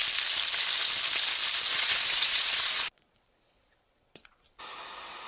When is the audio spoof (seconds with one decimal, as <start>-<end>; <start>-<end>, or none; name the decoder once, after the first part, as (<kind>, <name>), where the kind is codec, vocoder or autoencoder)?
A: 1.7-4.6 (vocoder, Vocos)